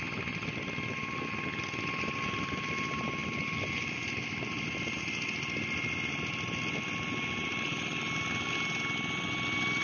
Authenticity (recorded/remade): recorded